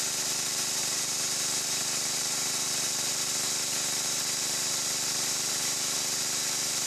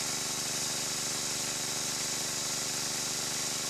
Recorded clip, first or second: second